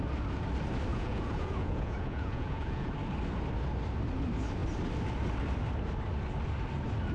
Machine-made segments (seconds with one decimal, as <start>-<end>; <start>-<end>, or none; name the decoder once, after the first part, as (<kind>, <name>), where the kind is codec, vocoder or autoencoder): 0.9-2.9 (vocoder, Vocos)